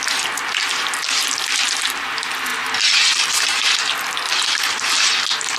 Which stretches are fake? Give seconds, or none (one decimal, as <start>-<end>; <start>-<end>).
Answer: none